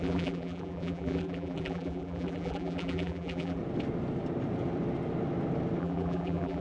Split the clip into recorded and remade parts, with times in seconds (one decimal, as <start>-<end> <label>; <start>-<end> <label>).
0.0-3.6 remade; 3.6-5.8 recorded; 5.8-6.6 remade